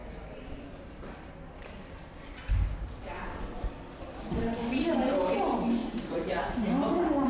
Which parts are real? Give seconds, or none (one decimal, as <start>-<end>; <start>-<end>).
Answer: 0.0-5.8; 6.6-7.3